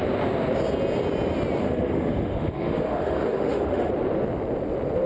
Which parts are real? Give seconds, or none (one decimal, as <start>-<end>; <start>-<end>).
0.0-1.6; 3.9-5.1